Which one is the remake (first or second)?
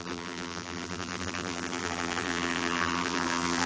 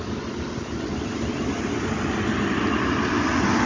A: first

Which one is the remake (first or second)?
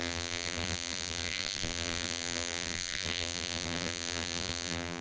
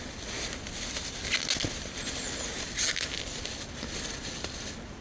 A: first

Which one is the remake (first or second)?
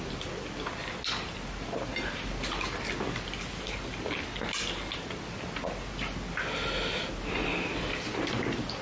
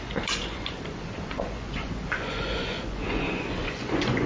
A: second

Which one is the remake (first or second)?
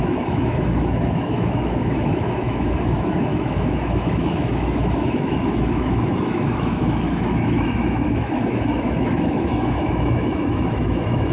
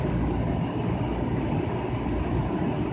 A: first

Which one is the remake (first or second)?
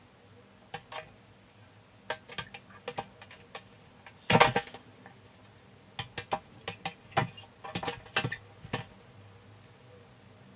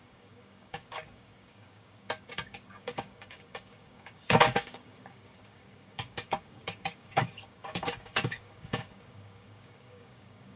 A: second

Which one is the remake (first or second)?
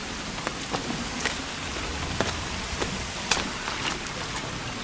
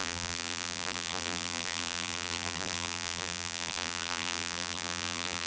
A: second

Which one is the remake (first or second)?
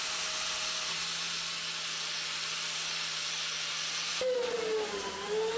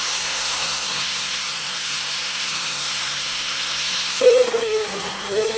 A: second